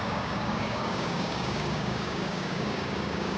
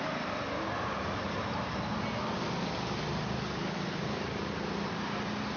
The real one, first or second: second